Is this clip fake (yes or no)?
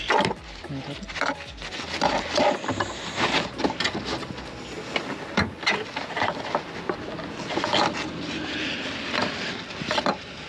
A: no